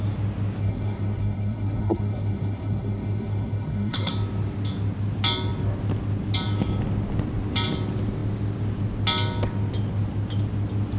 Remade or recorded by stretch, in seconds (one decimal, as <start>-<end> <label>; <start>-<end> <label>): 0.0-0.6 recorded; 0.6-4.1 remade; 4.1-11.0 recorded